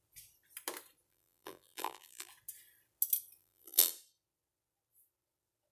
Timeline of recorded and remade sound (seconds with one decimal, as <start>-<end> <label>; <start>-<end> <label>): 0.0-1.1 recorded; 1.1-2.3 remade; 2.3-3.4 recorded; 3.4-3.9 remade; 3.9-5.7 recorded

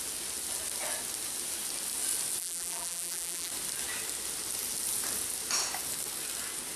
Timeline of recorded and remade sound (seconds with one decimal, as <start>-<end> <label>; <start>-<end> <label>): 0.0-2.4 recorded; 2.4-3.5 remade; 3.5-6.8 recorded

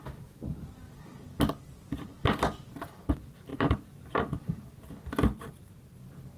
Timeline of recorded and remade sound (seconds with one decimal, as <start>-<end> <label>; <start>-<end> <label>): 0.0-3.5 recorded; 3.5-4.7 remade; 4.7-5.3 recorded; 5.3-6.0 remade; 6.0-6.4 recorded

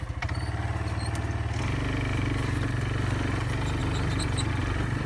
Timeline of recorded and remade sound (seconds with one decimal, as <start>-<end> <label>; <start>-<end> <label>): 0.0-2.1 recorded; 2.1-2.8 remade; 2.8-3.8 recorded; 3.8-4.5 remade; 4.5-5.1 recorded